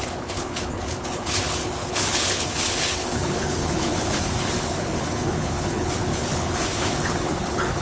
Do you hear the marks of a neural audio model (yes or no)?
yes